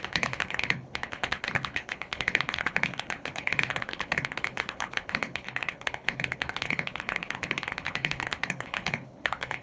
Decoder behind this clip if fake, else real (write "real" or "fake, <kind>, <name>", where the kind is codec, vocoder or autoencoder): fake, codec, HILCodec